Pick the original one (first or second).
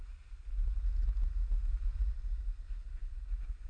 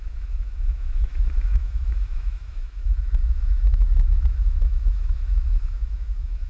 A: first